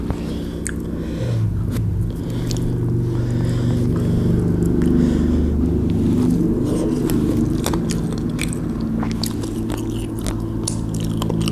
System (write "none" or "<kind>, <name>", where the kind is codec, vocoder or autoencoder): none